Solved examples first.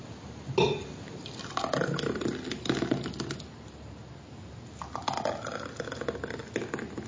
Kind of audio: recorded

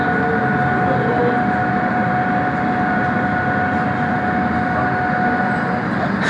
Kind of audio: recorded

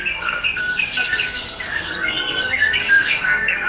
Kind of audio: remade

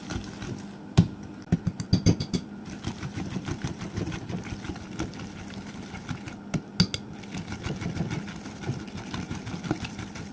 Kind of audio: recorded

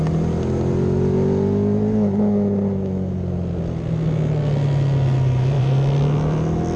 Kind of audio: recorded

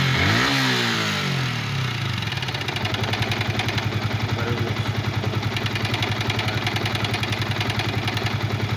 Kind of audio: recorded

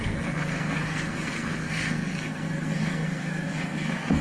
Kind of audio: remade